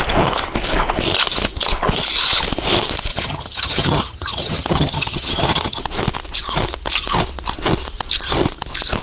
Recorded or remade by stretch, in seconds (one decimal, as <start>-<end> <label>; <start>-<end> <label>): 0.0-3.1 recorded; 3.1-5.8 remade; 5.8-9.0 recorded